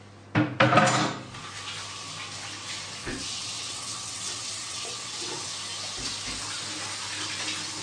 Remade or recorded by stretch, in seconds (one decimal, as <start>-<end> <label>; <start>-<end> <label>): 0.0-3.0 recorded; 3.0-5.4 remade; 5.4-7.8 recorded